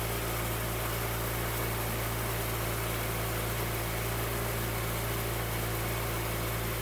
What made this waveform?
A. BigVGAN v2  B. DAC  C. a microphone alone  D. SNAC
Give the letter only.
C